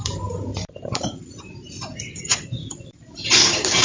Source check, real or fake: fake